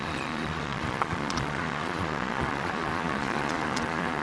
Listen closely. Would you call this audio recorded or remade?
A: remade